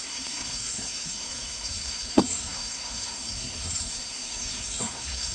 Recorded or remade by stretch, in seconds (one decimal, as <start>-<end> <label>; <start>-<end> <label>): 0.0-5.3 remade